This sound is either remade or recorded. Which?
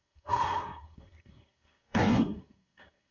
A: remade